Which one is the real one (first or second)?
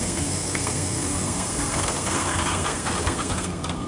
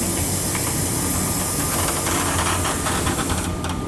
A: second